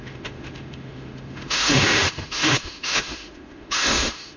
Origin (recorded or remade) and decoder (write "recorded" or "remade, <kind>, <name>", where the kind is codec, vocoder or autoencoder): remade, autoencoder, DAC-VAE